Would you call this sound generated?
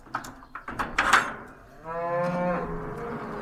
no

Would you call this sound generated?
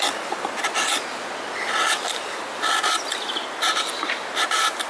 no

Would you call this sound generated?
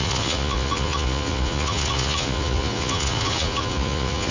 yes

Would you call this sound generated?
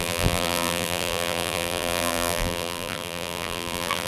yes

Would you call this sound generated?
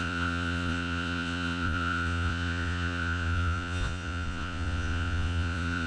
yes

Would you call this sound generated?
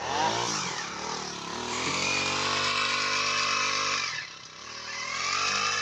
no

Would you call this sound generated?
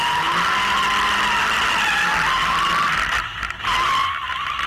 no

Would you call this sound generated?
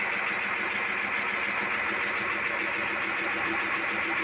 no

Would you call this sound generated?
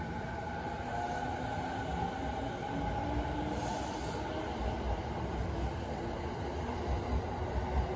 no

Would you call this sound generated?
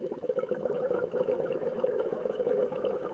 yes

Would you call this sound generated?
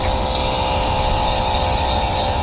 no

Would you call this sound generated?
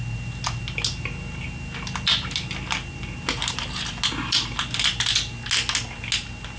no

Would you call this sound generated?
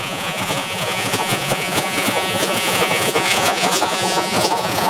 yes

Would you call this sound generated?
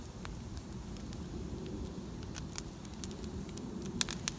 no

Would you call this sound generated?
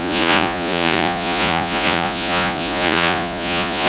yes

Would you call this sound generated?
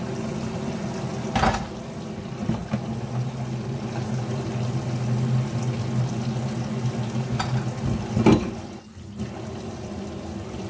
no